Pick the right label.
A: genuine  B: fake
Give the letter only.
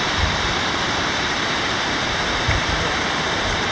B